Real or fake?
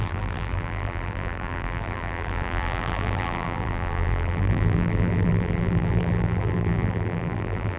fake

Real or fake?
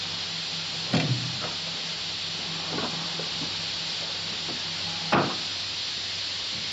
real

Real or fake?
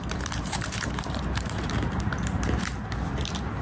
fake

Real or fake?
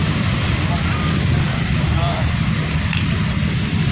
real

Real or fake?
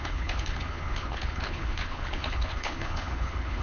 fake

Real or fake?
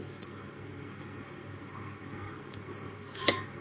fake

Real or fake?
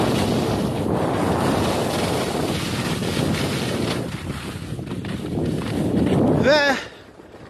real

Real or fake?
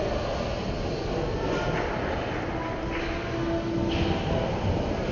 real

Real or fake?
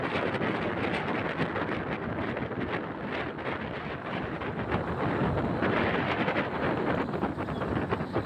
real